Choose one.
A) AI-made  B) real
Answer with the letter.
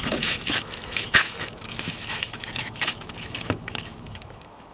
A